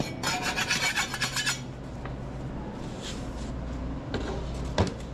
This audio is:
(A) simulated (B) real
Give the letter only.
B